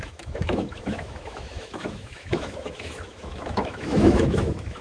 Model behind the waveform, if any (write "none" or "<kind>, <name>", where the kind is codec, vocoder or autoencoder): autoencoder, DAC-VAE